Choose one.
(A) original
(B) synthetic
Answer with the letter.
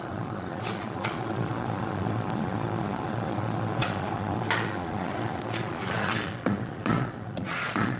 B